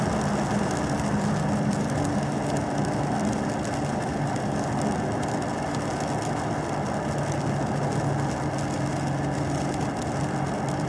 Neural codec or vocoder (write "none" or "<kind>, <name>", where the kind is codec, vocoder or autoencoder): none